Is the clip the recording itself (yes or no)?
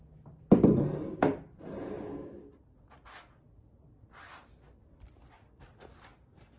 yes